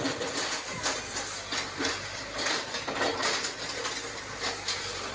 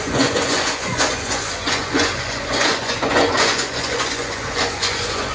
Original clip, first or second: first